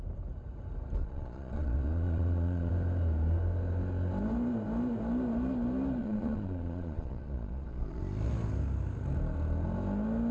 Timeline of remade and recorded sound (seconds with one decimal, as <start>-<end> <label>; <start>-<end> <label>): 0.0-1.0 recorded; 1.0-2.7 remade; 2.7-6.0 recorded; 6.0-8.0 remade; 8.0-10.3 recorded